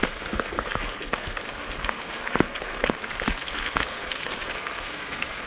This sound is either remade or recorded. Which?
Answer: remade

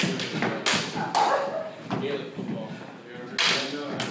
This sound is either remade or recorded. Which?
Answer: recorded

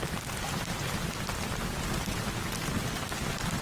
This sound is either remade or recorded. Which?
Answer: recorded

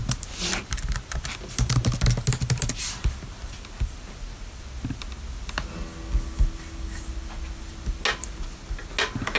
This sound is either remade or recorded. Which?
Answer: recorded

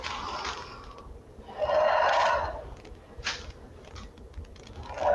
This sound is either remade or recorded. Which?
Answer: recorded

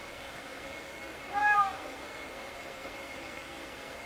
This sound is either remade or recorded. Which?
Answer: remade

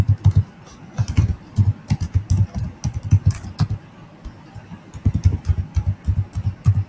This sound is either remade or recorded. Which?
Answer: recorded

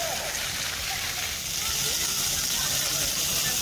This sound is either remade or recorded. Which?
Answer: recorded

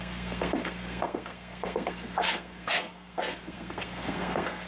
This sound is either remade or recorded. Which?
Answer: remade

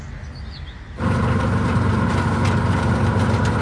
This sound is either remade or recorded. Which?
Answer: recorded